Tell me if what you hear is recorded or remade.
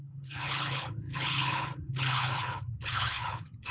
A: remade